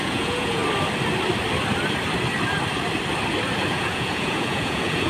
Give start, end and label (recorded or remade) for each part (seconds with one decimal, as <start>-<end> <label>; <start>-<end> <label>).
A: 0.0-0.6 remade; 0.6-3.7 recorded; 3.7-5.1 remade